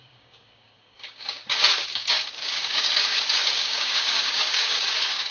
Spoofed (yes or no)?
yes